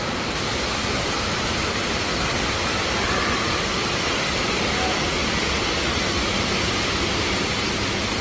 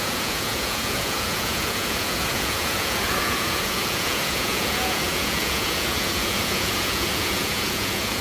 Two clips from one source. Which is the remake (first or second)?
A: second